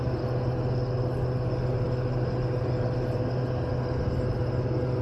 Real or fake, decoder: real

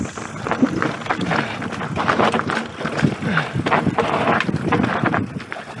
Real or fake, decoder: real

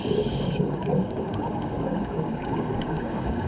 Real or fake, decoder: fake, codec, DAC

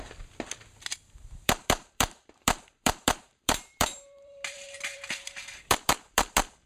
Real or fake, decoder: fake, vocoder, BigVGAN v2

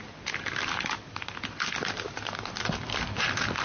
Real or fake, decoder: real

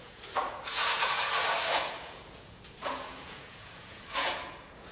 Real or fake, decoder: fake, vocoder, Vocos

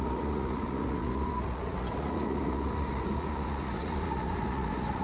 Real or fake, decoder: fake, vocoder, Vocos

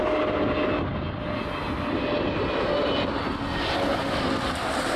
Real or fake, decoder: real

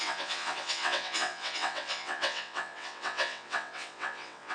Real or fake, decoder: fake, vocoder, WaveNeXt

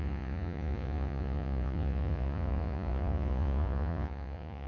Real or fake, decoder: fake, vocoder, Vocos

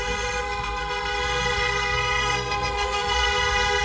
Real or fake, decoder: fake, codec, SNAC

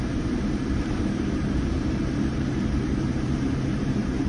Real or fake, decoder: fake, vocoder, BigVGAN v2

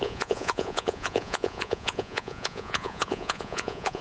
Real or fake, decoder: fake, vocoder, Vocos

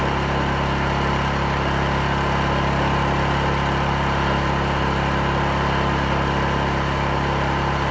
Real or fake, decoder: real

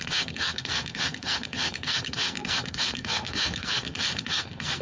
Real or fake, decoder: fake, codec, SNAC